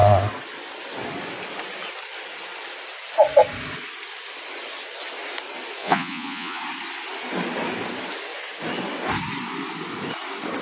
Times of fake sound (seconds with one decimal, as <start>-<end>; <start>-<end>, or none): 5.8-6.6